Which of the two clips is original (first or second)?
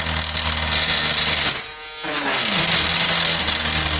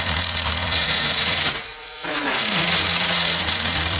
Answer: first